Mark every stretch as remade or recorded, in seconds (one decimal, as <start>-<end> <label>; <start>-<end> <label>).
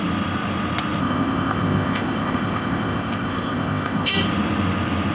0.0-1.0 recorded; 1.0-4.1 remade; 4.1-5.1 recorded